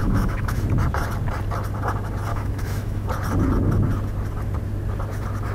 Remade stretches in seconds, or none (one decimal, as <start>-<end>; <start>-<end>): 0.0-0.6; 2.3-3.1

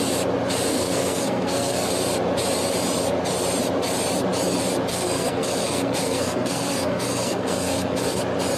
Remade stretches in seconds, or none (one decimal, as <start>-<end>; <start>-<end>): 0.7-1.9; 4.9-8.2

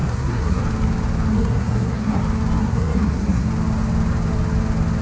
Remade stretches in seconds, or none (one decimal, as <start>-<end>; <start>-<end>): 0.0-0.6; 1.3-2.2; 2.6-3.5

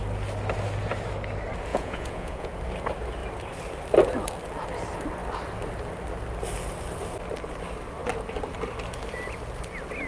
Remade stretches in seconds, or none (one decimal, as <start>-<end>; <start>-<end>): 1.7-2.5

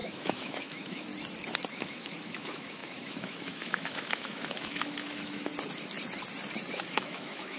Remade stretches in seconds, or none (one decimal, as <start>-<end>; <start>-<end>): 0.0-1.1; 1.7-5.5; 6.7-7.6

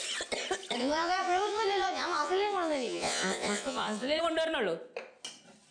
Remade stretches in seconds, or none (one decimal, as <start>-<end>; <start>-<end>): 0.8-4.2

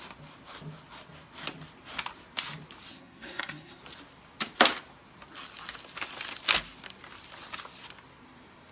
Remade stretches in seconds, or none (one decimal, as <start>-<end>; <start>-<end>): 2.9-3.8